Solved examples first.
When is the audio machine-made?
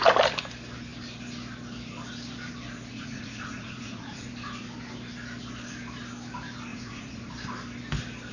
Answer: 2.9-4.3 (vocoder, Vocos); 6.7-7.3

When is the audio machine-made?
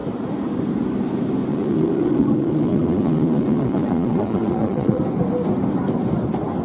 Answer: 1.5-5.0 (vocoder, Vocos)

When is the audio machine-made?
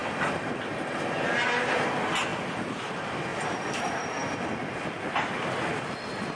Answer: none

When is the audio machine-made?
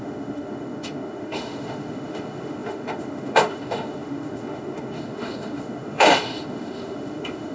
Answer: 0.0-7.5 (autoencoder, DAC-VAE)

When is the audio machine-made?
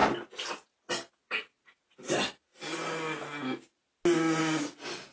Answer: none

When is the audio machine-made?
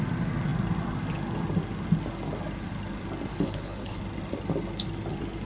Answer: 3.3-4.0 (codec, HILCodec)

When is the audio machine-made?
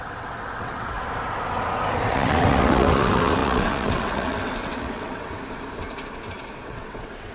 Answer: 0.0-0.9 (vocoder, WaveNeXt); 2.1-5.4; 6.5-7.3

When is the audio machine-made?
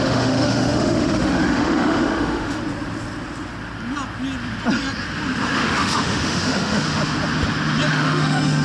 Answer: 0.0-2.6 (autoencoder, DAC-VAE); 5.4-7.0; 7.9-8.6